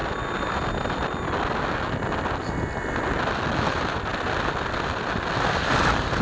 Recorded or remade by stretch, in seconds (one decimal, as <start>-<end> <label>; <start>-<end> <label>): 0.0-6.2 recorded